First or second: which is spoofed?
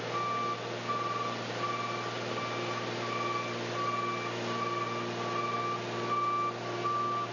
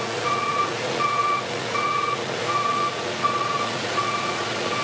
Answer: second